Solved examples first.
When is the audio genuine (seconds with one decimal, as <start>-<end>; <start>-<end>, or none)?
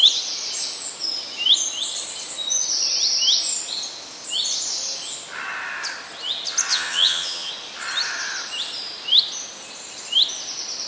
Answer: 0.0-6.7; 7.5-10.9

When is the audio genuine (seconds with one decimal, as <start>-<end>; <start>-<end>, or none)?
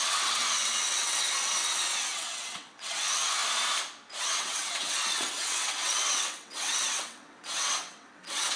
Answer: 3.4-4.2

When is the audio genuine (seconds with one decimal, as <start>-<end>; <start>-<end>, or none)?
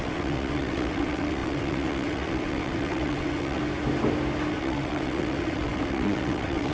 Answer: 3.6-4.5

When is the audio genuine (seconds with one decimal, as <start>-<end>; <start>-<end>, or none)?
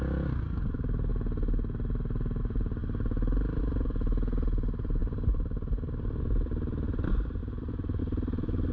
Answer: 1.1-2.4; 2.8-3.6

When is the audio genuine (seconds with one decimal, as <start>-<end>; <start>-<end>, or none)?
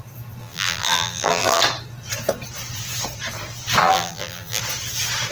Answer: 0.0-0.4; 1.6-3.8; 4.6-5.3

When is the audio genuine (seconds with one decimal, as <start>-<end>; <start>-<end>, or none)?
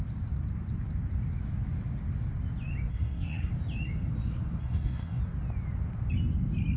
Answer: 0.0-2.9; 3.5-4.6; 5.2-6.8